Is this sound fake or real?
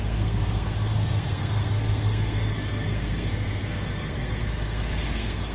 fake